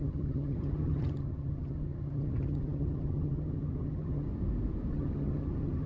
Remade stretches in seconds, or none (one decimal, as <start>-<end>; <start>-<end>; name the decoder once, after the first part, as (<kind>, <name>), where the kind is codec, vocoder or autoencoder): 0.0-4.3 (vocoder, HiFi-GAN); 4.9-5.9